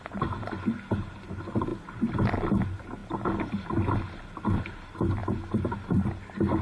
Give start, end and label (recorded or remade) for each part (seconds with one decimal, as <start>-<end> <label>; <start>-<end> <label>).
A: 0.0-6.6 recorded